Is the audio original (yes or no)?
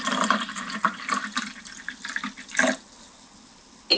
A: yes